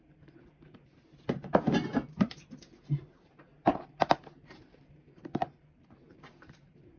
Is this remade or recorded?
remade